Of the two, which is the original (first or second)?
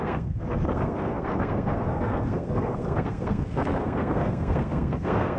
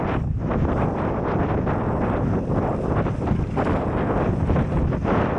second